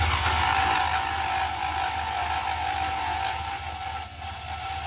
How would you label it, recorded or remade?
recorded